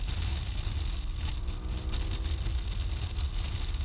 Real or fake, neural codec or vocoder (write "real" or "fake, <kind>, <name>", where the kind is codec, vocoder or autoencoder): real